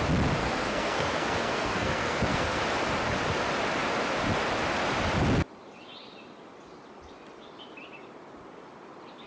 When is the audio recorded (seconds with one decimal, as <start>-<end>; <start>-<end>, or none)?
0.0-0.4; 2.6-9.3